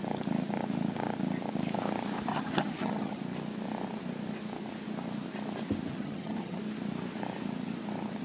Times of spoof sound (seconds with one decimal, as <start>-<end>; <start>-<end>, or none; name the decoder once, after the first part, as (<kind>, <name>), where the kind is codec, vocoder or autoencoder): 2.3-3.2 (vocoder, HiFi-GAN); 5.9-6.6